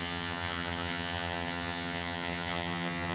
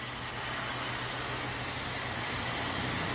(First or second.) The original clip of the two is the second